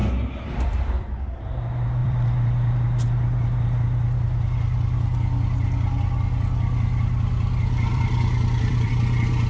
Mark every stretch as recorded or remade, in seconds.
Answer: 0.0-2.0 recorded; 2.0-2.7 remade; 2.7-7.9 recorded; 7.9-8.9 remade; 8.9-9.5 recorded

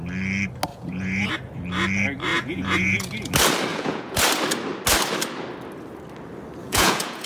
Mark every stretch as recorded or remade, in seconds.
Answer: 0.0-0.7 recorded; 0.7-1.3 remade; 1.3-2.3 recorded; 2.3-3.3 remade; 3.3-3.7 recorded; 3.7-4.2 remade; 4.2-6.6 recorded; 6.6-7.3 remade

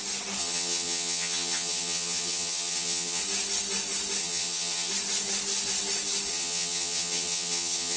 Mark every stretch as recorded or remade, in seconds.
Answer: 0.0-0.4 recorded; 0.4-3.2 remade; 3.2-4.2 recorded; 4.2-4.9 remade; 4.9-6.3 recorded; 6.3-8.0 remade